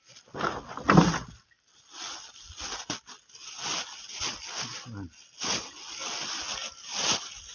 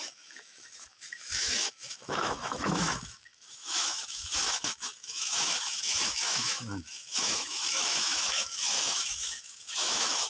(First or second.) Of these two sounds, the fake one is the second